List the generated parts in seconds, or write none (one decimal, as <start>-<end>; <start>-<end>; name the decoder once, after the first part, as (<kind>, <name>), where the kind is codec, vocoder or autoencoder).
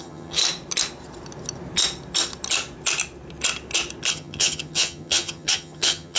0.0-0.4 (vocoder, HiFi-GAN); 4.1-6.2